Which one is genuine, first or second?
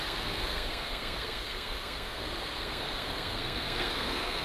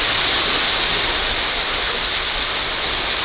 second